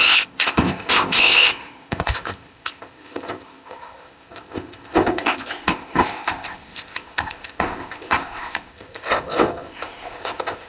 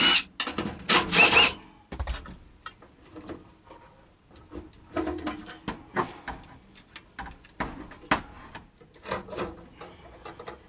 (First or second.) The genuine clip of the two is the second